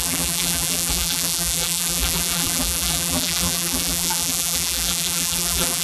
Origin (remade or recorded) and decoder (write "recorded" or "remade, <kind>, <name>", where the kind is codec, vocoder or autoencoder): remade, vocoder, BigVGAN v2